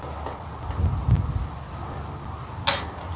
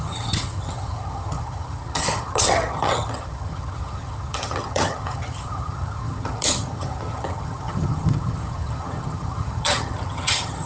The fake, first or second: second